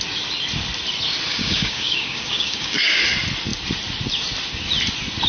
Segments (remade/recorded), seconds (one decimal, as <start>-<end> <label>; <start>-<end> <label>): 0.0-1.3 recorded; 1.3-3.0 remade; 3.0-5.3 recorded